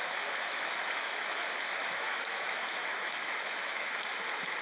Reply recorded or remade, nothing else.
remade